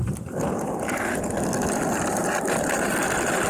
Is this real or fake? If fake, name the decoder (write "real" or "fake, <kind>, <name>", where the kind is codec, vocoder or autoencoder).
real